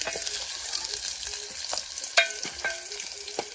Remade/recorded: recorded